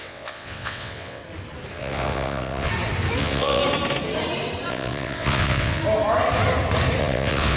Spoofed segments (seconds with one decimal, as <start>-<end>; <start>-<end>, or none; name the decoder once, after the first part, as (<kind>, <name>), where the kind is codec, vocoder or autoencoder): 0.0-1.2 (vocoder, WaveNeXt); 1.7-2.7; 3.2-3.6; 4.7-5.8; 7.0-7.6